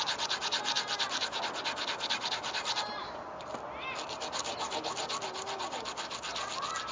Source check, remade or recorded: recorded